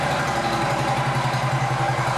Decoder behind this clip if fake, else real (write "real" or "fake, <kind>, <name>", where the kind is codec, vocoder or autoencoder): real